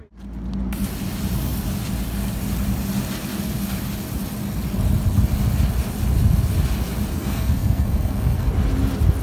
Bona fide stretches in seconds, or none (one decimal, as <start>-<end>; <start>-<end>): 0.0-7.1; 8.5-9.2